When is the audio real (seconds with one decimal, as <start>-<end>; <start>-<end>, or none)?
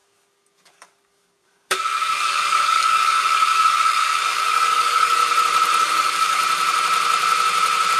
5.2-5.8; 6.4-8.0